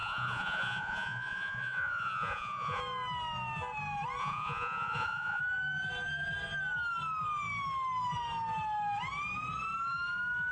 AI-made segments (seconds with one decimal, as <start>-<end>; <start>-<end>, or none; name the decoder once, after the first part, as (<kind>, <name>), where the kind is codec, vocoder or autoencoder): 0.0-2.8 (vocoder, Vocos); 4.2-5.4